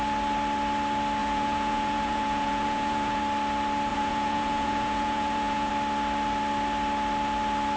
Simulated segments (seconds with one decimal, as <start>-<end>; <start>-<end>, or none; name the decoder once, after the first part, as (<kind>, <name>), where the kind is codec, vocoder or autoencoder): 1.2-3.2 (vocoder, Vocos); 3.9-5.7